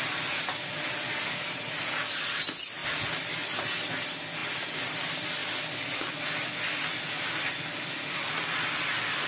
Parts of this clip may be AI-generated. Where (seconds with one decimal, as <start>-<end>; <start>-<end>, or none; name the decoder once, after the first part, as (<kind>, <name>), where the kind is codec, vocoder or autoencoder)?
none